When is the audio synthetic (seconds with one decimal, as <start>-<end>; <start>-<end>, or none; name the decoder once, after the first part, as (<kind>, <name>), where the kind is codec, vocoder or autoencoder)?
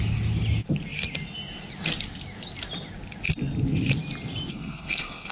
4.5-5.3 (codec, SNAC)